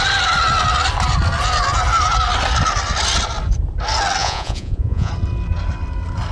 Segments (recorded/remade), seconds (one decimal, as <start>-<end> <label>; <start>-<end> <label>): 0.0-4.2 recorded; 4.2-5.1 remade; 5.1-6.3 recorded